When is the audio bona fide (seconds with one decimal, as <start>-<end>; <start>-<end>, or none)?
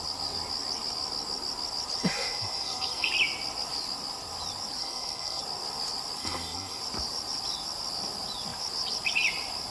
0.0-2.0; 3.1-4.8; 5.4-6.2; 6.8-9.7